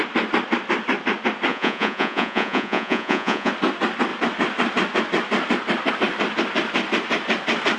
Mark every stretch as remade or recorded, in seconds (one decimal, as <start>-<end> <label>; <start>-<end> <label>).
0.0-1.5 recorded; 1.5-3.5 remade; 3.5-7.8 recorded